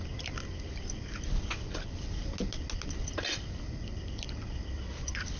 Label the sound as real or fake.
real